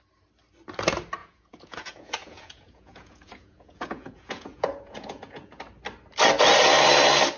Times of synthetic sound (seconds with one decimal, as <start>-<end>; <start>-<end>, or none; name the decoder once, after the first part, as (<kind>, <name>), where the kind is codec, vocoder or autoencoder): 1.2-5.6 (vocoder, Vocos)